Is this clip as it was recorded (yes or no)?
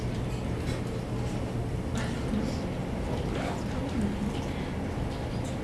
yes